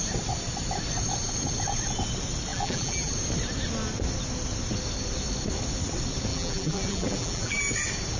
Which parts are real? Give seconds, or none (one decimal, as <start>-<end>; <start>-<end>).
0.0-2.5; 3.1-6.3; 7.6-8.2